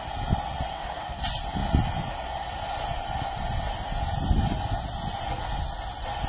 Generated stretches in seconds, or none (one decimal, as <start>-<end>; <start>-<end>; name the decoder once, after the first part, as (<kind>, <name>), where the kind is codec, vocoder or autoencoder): 0.7-1.2 (codec, DAC)